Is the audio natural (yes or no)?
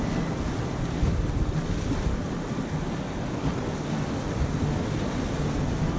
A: yes